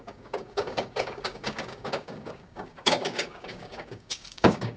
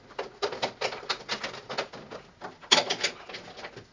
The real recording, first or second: second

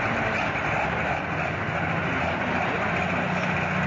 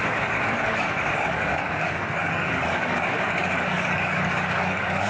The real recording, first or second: first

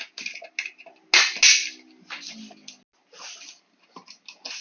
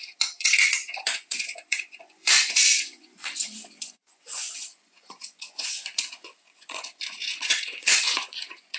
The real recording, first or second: first